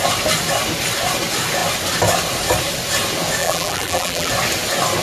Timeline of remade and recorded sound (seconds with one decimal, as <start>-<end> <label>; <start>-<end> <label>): 0.0-3.4 recorded; 3.4-4.3 remade; 4.3-5.0 recorded